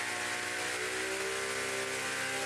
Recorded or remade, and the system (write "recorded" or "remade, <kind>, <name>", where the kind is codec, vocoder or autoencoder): recorded